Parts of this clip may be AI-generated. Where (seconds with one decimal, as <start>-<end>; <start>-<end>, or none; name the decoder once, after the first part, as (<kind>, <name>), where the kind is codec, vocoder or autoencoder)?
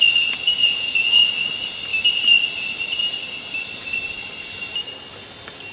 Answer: 0.6-1.3 (vocoder, Vocos)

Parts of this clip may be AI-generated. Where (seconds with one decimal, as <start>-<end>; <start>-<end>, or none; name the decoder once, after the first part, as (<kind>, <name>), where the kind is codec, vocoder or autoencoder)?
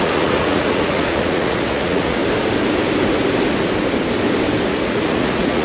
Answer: 0.0-2.2 (vocoder, Vocos); 4.7-5.6